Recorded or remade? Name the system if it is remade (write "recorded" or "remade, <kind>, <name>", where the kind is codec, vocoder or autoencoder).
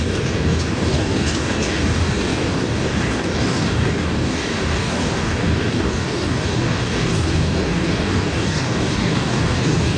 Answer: remade, codec, DAC